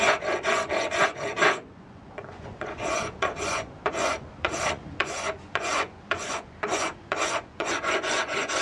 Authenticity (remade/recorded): remade